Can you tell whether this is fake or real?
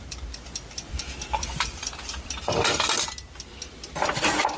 fake